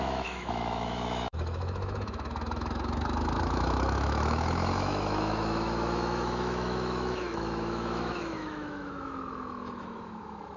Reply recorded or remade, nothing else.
remade